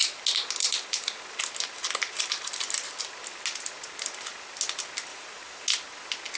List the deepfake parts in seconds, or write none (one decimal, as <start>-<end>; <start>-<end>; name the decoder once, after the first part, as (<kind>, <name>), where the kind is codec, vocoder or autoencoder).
5.1-5.6 (vocoder, Vocos)